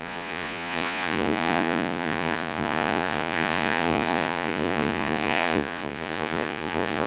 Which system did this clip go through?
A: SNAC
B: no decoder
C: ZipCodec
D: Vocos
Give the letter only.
D